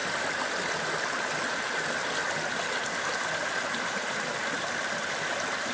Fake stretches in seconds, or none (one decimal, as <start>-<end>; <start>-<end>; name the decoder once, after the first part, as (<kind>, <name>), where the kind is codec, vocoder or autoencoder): 4.0-4.7 (vocoder, BigVGAN v2)